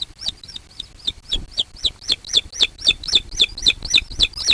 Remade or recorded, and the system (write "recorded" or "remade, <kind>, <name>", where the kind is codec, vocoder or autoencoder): recorded